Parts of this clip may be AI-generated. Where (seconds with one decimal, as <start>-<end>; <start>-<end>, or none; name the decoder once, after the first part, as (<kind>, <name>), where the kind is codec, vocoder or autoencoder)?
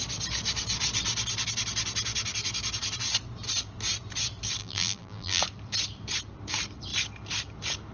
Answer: 4.6-5.4 (vocoder, BigVGAN v2)